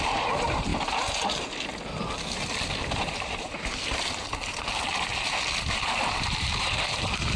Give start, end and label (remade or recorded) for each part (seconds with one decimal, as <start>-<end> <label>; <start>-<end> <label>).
0.0-0.7 remade; 0.7-2.8 recorded; 2.8-5.1 remade; 5.1-5.7 recorded; 5.7-7.4 remade